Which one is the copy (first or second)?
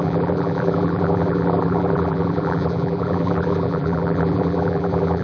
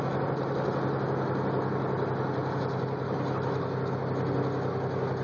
first